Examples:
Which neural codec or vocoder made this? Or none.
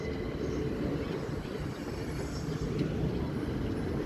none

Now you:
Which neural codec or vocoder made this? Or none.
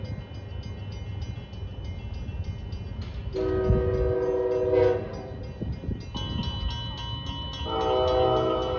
none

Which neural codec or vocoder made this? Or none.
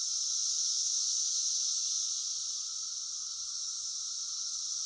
none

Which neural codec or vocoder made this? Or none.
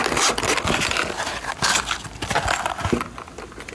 none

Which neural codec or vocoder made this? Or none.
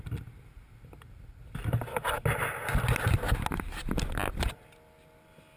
none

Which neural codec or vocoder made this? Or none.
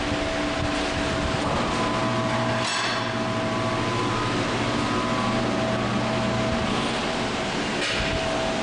none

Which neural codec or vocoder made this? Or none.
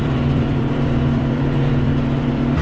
vocoder, BigVGAN v2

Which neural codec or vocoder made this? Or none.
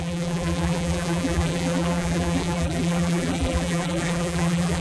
vocoder, BigVGAN v2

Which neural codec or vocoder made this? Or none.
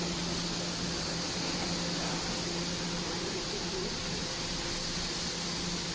none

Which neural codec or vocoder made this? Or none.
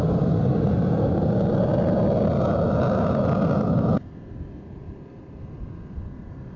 none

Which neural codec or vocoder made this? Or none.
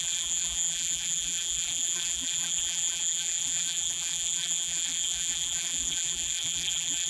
vocoder, BigVGAN v2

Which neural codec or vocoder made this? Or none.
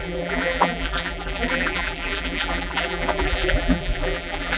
vocoder, BigVGAN v2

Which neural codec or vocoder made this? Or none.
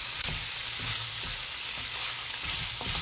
none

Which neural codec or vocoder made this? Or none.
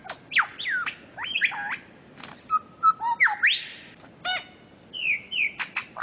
none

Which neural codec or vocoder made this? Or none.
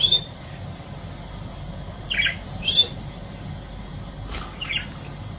none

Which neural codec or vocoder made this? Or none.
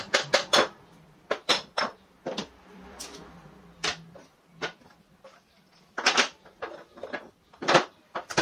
vocoder, BigVGAN v2